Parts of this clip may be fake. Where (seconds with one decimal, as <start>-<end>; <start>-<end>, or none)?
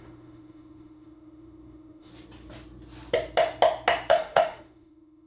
0.0-2.1; 4.1-5.3